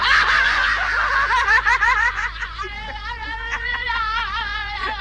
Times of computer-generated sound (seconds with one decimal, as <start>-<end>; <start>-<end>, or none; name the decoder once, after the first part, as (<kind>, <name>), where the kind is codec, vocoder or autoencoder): 0.0-0.7 (vocoder, Vocos); 1.4-5.0